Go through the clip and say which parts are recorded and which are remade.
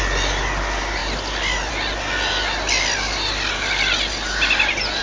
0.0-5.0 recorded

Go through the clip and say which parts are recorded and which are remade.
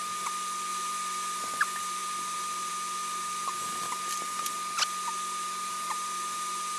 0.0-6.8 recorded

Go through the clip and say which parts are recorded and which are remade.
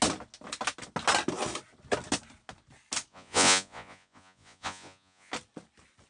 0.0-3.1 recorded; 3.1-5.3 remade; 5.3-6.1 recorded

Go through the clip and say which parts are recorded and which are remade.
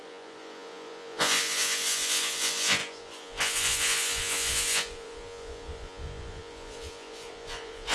0.0-7.9 remade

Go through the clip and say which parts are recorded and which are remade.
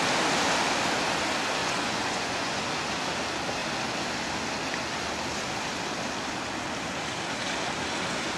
0.0-1.6 recorded; 1.6-2.6 remade; 2.6-8.4 recorded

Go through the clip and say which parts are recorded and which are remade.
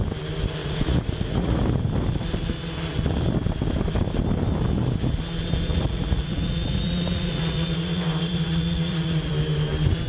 0.0-0.6 recorded; 0.6-1.6 remade; 1.6-5.7 recorded; 5.7-9.3 remade; 9.3-10.1 recorded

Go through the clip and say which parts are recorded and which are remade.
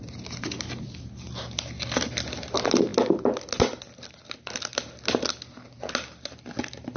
0.0-7.0 recorded